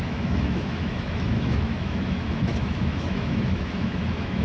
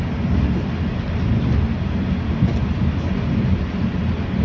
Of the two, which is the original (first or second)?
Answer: second